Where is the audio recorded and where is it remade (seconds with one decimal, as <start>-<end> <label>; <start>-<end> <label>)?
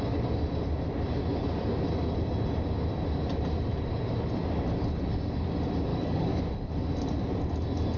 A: 0.0-5.9 recorded; 5.9-6.4 remade; 6.4-8.0 recorded